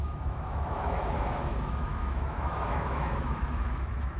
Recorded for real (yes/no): no